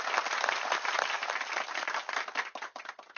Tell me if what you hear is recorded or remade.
recorded